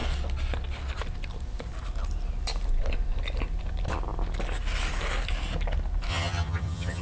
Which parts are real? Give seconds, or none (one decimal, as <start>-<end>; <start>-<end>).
0.0-6.1